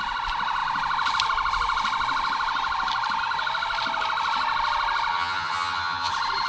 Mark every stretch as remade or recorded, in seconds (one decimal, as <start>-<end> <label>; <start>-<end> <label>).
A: 0.0-5.1 recorded; 5.1-6.1 remade; 6.1-6.5 recorded